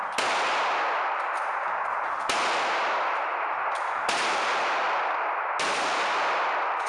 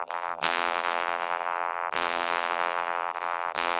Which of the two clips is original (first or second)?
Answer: first